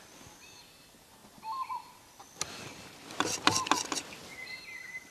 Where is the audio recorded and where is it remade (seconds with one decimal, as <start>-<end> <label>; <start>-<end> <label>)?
0.0-5.1 recorded